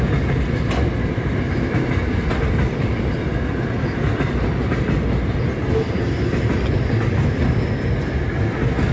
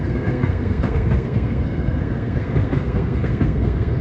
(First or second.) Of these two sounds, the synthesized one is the second